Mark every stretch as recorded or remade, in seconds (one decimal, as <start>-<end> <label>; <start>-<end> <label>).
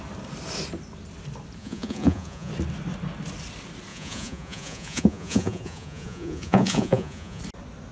0.0-1.6 recorded; 1.6-2.5 remade; 2.5-3.9 recorded; 3.9-7.4 remade; 7.4-7.9 recorded